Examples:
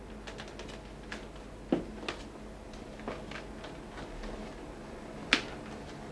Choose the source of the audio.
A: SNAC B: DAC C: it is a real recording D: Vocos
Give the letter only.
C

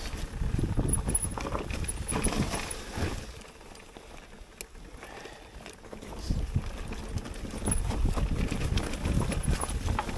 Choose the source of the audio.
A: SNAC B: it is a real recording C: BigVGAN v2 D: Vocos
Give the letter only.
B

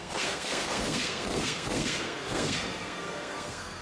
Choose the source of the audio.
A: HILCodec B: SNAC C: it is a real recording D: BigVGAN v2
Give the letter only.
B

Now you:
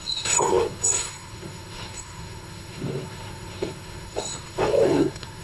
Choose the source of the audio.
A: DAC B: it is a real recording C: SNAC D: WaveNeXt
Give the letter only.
C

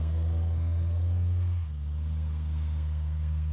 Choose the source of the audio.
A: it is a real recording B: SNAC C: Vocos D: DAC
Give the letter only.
B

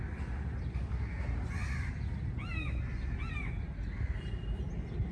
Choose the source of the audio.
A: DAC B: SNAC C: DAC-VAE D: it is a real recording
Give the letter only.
D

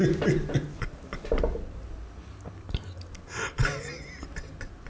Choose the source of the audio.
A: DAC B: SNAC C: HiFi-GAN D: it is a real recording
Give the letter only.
D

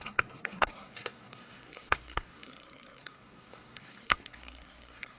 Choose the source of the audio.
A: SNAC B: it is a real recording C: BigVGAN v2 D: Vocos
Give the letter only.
A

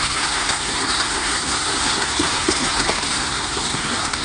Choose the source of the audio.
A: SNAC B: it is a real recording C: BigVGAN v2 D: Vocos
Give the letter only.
A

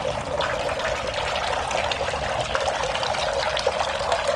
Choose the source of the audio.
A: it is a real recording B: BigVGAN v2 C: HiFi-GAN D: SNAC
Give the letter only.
A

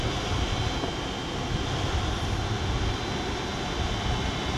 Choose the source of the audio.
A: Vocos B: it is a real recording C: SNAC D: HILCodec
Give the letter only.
B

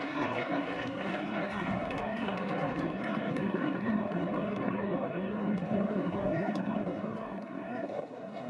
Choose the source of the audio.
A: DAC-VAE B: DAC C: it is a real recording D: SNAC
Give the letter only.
D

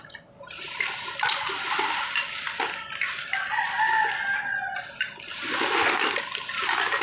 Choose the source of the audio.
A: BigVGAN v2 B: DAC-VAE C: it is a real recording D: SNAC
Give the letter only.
C